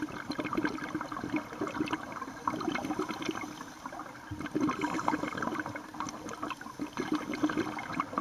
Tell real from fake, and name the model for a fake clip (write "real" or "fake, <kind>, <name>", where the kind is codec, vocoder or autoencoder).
real